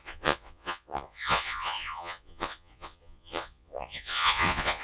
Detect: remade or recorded remade